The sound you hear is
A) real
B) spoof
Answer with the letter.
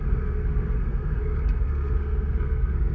B